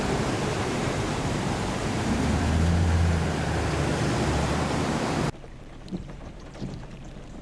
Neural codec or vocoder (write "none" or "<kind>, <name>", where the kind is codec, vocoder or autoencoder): vocoder, BigVGAN v2